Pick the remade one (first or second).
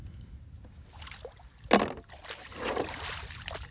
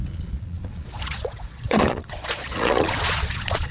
second